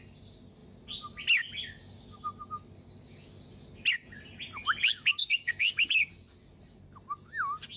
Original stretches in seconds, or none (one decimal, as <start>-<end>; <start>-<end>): 0.0-5.2; 6.1-7.8